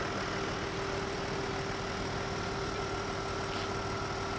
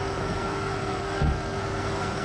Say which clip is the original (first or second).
first